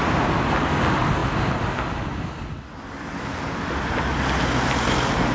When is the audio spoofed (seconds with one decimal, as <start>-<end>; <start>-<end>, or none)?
none